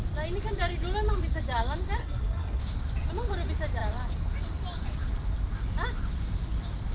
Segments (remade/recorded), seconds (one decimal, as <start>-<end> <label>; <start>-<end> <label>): 0.0-2.0 recorded; 2.0-2.6 remade; 2.6-6.9 recorded